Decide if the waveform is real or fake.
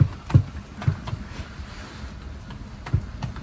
real